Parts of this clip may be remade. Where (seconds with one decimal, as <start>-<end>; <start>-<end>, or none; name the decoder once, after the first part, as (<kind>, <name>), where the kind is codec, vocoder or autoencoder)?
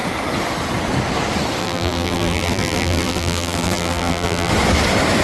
1.6-4.5 (vocoder, BigVGAN v2)